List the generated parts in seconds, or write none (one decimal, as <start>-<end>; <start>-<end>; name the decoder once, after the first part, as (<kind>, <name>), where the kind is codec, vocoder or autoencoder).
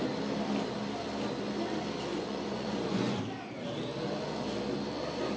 2.1-3.2 (vocoder, Vocos)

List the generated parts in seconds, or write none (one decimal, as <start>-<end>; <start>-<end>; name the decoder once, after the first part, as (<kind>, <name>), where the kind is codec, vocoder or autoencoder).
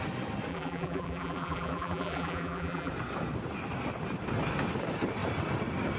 0.5-2.9 (vocoder, BigVGAN v2)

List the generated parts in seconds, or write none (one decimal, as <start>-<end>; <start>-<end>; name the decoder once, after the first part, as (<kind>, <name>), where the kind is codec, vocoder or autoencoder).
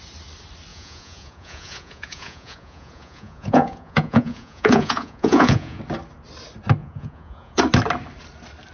0.7-5.8 (vocoder, Vocos); 6.8-7.6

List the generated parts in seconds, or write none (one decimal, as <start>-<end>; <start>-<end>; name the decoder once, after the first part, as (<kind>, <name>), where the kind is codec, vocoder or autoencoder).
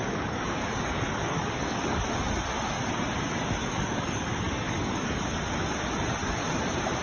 0.0-2.0 (codec, DAC); 3.6-5.2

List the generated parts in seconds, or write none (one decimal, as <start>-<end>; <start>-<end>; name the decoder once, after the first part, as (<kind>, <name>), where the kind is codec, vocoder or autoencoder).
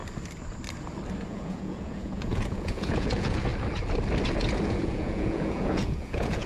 1.3-3.5 (vocoder, Vocos); 4.7-6.5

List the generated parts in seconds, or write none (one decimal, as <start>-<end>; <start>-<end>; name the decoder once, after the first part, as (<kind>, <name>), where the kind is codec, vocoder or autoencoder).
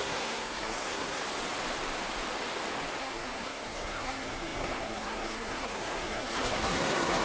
0.0-1.2 (codec, SNAC); 3.0-7.2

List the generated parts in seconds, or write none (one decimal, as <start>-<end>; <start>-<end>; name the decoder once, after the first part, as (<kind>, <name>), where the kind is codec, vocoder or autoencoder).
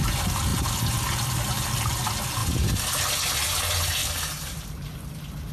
4.0-4.7 (vocoder, BigVGAN v2)